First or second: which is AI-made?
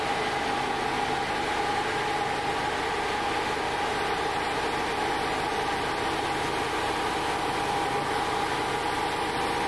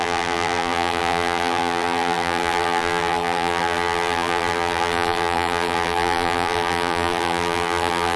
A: second